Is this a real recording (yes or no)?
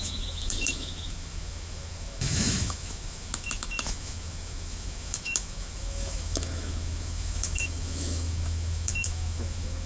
no